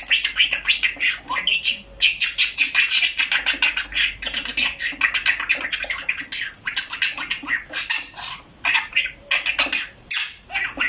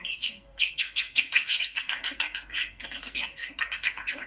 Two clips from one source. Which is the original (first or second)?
first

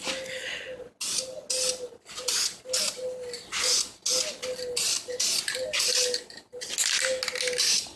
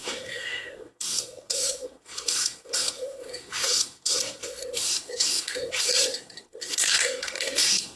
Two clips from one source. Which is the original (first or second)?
first